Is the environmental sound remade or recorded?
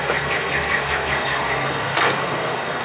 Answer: remade